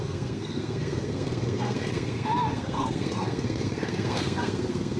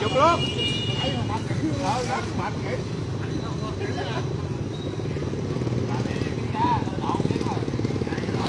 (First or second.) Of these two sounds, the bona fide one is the second